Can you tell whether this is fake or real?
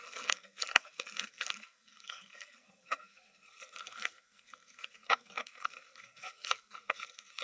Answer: fake